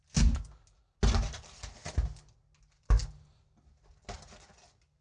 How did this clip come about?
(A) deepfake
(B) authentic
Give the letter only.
B